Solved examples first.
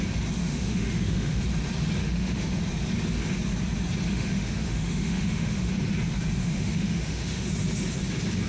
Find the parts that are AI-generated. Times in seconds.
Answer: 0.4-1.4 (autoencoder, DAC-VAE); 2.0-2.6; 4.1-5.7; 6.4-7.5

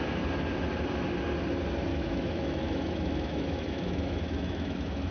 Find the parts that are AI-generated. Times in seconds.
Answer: 1.9-5.1 (autoencoder, DAC-VAE)

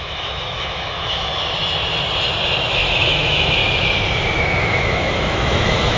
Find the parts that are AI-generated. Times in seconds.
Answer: 0.0-1.3 (autoencoder, DAC-VAE); 2.6-3.6; 4.4-6.0

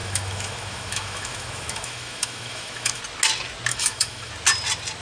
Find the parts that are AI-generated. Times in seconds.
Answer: 0.0-3.0 (autoencoder, DAC-VAE); 3.7-4.3

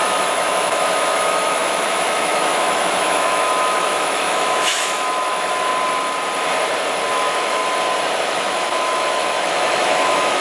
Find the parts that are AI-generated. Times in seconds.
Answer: 0.0-5.7 (autoencoder, DAC-VAE); 7.1-7.6; 8.2-10.4

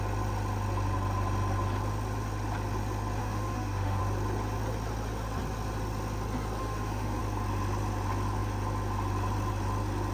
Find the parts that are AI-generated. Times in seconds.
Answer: 3.2-4.0 (autoencoder, DAC-VAE); 6.6-7.2

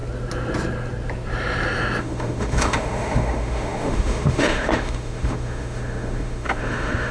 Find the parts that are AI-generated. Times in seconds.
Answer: 2.0-7.1 (autoencoder, DAC-VAE)

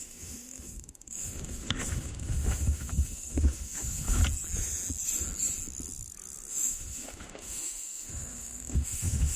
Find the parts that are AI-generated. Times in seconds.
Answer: 0.0-4.2 (autoencoder, DAC-VAE); 6.5-9.4